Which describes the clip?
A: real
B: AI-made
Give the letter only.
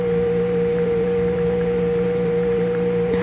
B